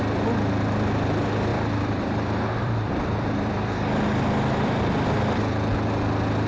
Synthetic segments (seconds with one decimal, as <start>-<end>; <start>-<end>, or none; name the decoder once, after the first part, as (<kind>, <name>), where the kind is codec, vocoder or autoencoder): 1.5-5.4 (vocoder, BigVGAN v2)